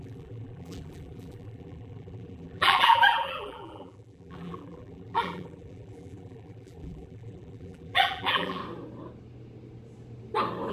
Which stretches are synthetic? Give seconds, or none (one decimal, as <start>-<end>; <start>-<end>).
0.0-8.6